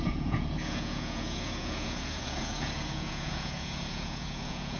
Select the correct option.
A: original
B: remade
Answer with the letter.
B